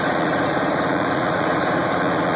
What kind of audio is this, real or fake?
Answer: fake